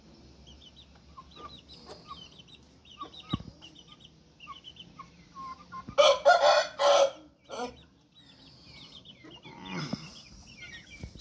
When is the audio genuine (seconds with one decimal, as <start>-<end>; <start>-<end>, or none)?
0.0-11.2